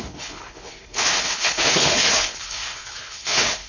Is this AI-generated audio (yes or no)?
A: yes